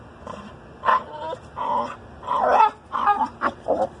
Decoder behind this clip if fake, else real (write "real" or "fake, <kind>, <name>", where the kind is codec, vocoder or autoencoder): real